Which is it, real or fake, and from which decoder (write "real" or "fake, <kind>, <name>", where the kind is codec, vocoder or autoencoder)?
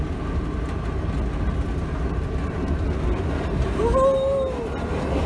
real